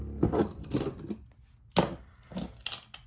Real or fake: real